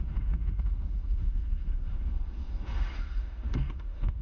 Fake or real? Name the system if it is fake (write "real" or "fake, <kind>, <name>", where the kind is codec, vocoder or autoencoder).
fake, autoencoder, DAC-VAE